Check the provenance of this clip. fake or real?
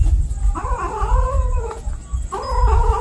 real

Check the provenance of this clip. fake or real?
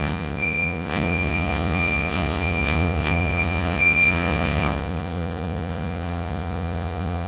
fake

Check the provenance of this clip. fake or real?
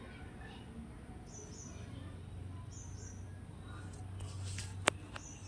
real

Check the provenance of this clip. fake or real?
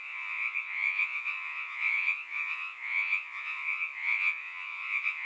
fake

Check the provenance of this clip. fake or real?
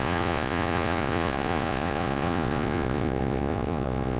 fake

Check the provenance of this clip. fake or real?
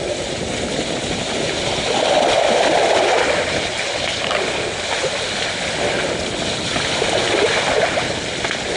real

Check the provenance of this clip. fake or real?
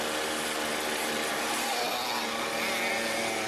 real